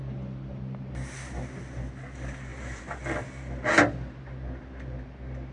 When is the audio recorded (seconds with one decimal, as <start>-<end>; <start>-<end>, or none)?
0.0-5.5